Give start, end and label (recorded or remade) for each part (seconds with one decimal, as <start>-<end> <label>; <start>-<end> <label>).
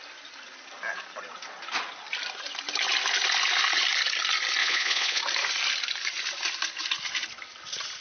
0.0-4.6 recorded; 4.6-5.2 remade; 5.2-8.0 recorded